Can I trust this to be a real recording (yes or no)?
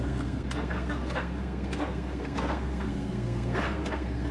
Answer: no